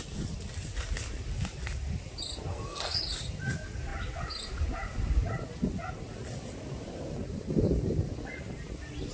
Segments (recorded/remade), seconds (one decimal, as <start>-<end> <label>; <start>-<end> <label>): 0.0-2.5 recorded; 2.5-3.0 remade; 3.0-9.1 recorded